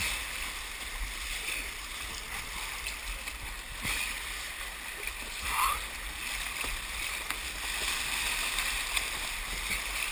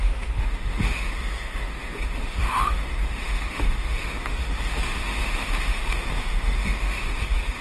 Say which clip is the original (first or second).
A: first